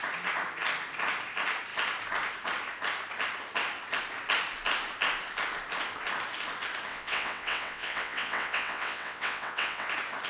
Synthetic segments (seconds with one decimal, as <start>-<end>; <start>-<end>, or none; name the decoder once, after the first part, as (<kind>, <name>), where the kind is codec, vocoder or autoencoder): 6.9-9.9 (vocoder, WaveNeXt)